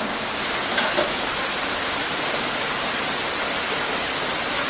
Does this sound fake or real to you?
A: real